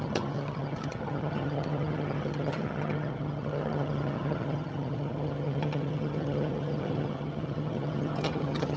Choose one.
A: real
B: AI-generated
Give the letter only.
B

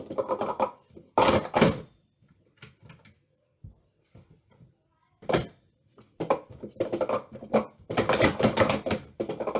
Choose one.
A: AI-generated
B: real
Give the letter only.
B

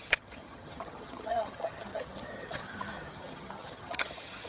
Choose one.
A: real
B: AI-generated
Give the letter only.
B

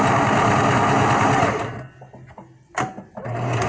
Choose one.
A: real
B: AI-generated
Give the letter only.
A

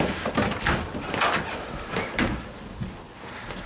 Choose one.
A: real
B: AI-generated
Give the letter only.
A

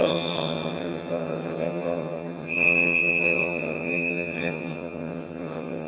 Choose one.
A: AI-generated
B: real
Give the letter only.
A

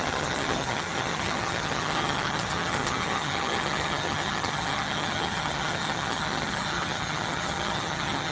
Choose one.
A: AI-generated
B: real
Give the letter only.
A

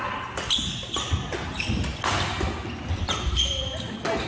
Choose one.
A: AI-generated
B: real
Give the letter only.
B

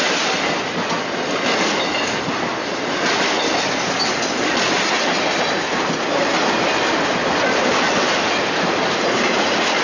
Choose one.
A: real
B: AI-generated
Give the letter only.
A